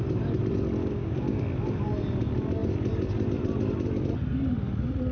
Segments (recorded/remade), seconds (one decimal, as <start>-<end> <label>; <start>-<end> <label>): 0.0-0.8 recorded; 0.8-1.4 remade; 1.4-5.1 recorded